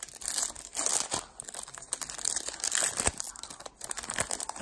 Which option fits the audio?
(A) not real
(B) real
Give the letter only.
B